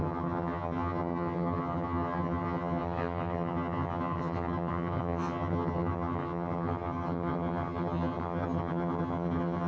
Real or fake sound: fake